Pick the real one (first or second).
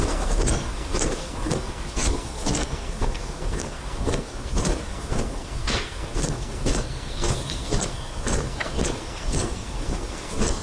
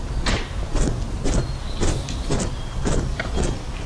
second